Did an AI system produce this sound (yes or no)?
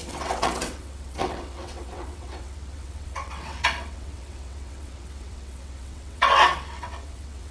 yes